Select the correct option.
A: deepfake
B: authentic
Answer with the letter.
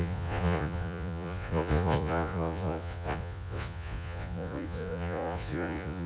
A